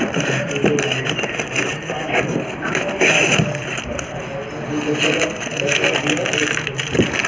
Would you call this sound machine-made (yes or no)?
no